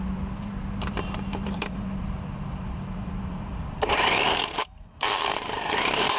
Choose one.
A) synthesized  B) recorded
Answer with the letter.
A